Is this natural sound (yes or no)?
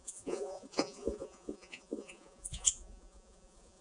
no